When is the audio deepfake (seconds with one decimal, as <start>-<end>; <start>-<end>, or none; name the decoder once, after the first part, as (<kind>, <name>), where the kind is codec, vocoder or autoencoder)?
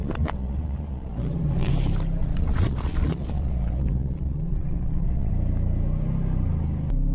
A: 0.0-1.7 (vocoder, Vocos); 2.2-5.3